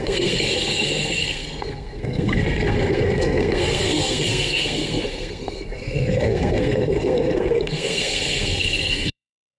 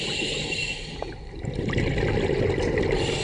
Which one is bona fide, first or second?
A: second